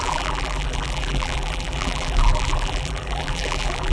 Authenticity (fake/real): fake